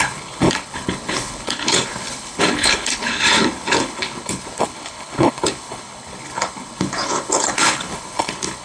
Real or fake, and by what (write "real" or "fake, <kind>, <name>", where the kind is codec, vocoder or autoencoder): fake, codec, HILCodec